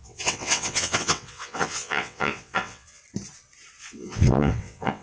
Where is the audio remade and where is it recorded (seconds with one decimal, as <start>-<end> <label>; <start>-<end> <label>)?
0.0-3.0 remade; 3.0-3.8 recorded; 3.8-5.0 remade